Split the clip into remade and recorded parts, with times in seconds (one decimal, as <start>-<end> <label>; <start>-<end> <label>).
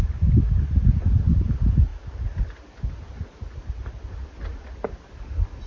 0.0-5.7 recorded